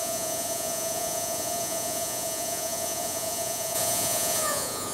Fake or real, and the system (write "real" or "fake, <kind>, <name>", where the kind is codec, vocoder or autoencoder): fake, vocoder, Vocos